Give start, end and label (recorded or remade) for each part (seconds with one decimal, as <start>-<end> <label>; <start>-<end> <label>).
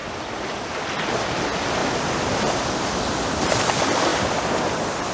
0.0-0.7 remade; 0.7-1.8 recorded; 1.8-2.5 remade; 2.5-4.1 recorded; 4.1-5.1 remade